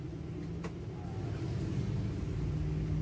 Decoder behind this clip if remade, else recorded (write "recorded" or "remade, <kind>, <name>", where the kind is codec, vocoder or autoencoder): recorded